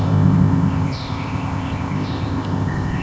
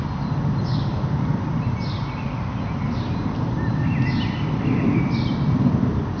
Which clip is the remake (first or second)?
first